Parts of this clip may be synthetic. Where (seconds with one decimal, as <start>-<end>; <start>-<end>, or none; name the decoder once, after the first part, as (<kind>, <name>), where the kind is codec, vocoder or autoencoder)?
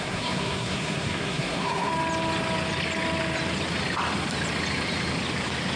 0.0-1.9 (codec, SNAC)